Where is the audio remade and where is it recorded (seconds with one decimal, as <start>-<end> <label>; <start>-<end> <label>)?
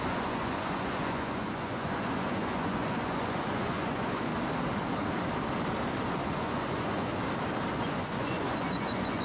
0.0-4.3 remade; 4.3-6.3 recorded; 6.3-7.1 remade; 7.1-7.7 recorded; 7.7-9.2 remade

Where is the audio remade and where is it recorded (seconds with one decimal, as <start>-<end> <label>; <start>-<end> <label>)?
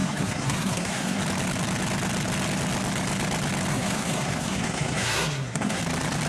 0.0-1.2 remade; 1.2-3.7 recorded; 3.7-5.8 remade; 5.8-6.3 recorded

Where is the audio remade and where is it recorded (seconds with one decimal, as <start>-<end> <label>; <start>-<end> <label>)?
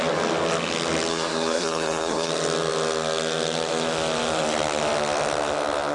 0.0-1.1 recorded; 1.1-2.3 remade; 2.3-5.9 recorded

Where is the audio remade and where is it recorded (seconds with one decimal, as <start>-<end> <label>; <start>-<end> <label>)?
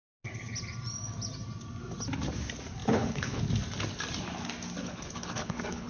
0.0-2.8 recorded; 2.8-3.4 remade; 3.4-4.8 recorded; 4.8-5.9 remade